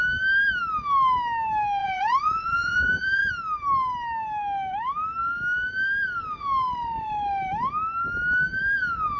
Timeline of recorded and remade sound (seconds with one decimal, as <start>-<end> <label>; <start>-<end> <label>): 0.0-1.8 recorded; 1.8-3.3 remade; 3.3-9.2 recorded